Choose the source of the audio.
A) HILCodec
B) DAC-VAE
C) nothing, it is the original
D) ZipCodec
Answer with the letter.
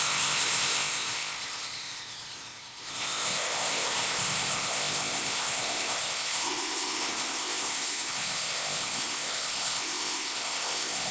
D